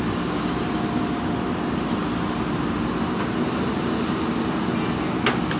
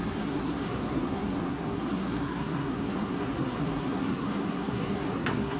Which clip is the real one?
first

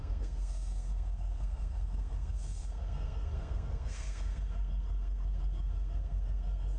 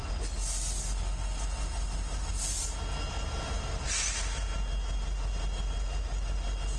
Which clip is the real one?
second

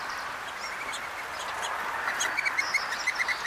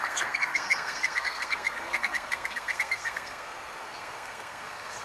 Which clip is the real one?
first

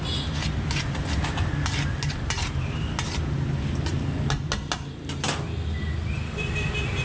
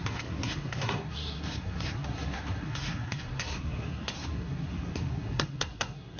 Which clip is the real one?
first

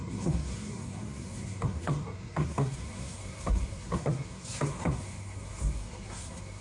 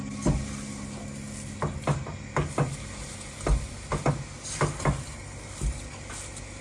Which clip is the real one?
second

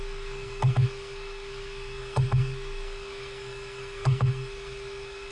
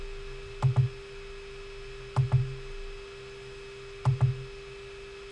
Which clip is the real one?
second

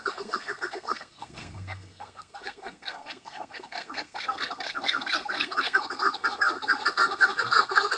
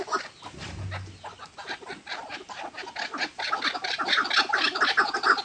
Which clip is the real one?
second